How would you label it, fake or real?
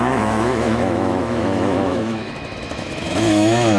fake